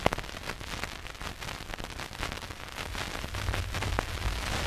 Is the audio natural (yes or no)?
yes